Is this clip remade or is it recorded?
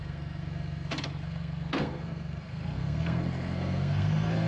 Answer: remade